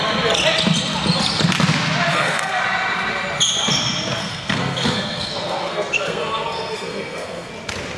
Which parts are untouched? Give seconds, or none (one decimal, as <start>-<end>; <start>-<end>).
0.0-2.1; 2.6-4.2; 7.5-8.0